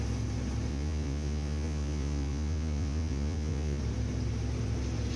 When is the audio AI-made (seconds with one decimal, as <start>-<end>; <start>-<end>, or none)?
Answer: 0.7-3.8